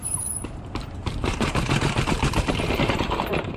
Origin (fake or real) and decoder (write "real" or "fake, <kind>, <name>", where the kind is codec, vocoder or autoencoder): fake, vocoder, BigVGAN v2